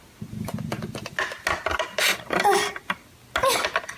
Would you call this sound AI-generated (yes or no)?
no